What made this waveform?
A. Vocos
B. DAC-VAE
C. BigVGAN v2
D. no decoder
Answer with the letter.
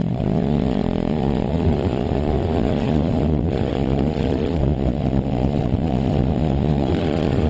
A